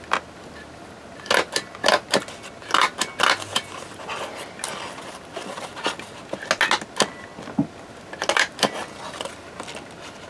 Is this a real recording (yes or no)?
yes